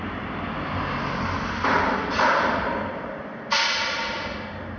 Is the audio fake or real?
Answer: real